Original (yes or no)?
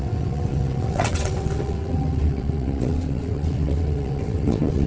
no